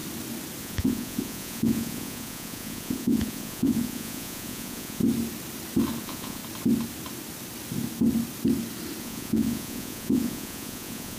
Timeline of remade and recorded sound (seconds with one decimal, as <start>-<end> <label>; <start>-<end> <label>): 0.0-0.6 recorded; 0.6-5.0 remade; 5.0-6.0 recorded; 6.0-6.4 remade; 6.4-9.0 recorded; 9.0-11.2 remade